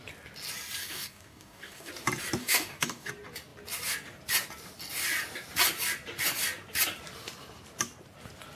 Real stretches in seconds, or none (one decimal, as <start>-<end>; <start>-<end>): 0.0-0.8; 1.9-2.4; 3.1-8.6